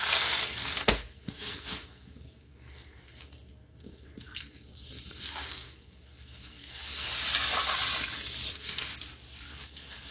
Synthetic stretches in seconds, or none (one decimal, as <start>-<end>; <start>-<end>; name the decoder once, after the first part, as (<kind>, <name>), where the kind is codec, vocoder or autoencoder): 0.0-7.1 (codec, SNAC); 8.5-8.9; 9.5-10.1